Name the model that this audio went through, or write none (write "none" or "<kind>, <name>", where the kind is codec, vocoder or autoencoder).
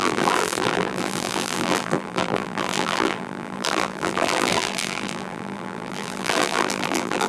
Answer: vocoder, BigVGAN v2